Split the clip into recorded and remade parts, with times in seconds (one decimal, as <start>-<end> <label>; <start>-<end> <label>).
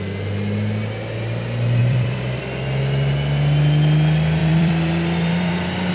0.0-1.8 recorded; 1.8-2.4 remade; 2.4-4.4 recorded; 4.4-5.9 remade